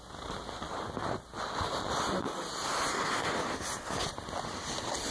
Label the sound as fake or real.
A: real